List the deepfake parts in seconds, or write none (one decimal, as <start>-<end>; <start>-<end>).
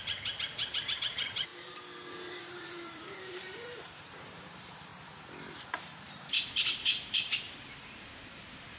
0.0-1.5; 2.3-4.9; 5.7-8.8